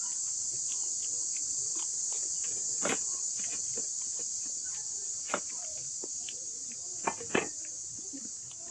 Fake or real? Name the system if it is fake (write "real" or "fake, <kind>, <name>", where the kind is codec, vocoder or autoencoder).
real